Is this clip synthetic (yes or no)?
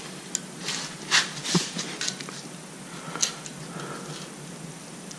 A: no